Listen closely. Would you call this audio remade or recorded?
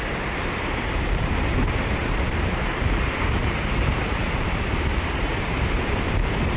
remade